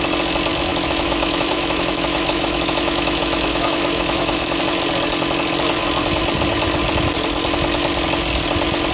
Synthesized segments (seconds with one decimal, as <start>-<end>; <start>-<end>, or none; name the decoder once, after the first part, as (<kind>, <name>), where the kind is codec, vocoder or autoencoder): 0.7-4.6 (autoencoder, DAC-VAE)